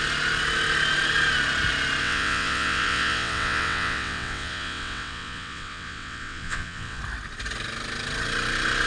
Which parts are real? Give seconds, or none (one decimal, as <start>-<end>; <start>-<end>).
0.0-2.0; 7.0-8.9